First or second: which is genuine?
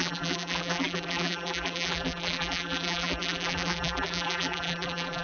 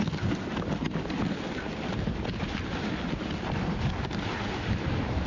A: second